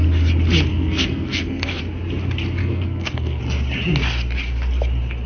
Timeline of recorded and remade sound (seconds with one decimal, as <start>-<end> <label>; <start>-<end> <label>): 0.0-0.7 recorded; 0.7-1.8 remade; 1.8-2.6 recorded; 2.6-3.4 remade; 3.4-5.3 recorded